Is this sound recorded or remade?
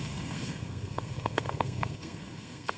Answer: remade